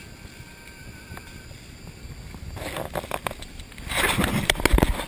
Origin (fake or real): real